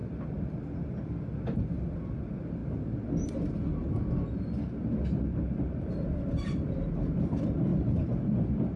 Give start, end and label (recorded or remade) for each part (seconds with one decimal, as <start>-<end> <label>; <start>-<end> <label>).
0.0-7.7 recorded; 7.7-8.8 remade